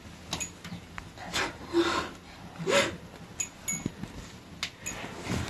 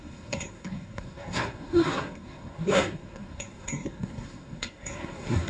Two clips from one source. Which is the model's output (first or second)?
second